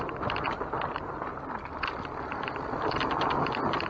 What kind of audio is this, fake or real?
real